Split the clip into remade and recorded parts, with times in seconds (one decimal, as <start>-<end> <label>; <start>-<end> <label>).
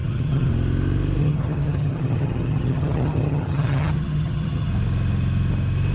0.0-0.5 remade; 0.5-1.2 recorded; 1.2-4.7 remade; 4.7-5.9 recorded